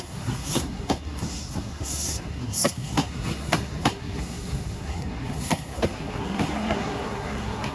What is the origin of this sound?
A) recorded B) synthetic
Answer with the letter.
B